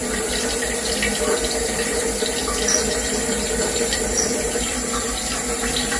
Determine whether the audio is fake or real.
fake